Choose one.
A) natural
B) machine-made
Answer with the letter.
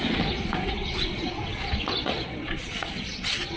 B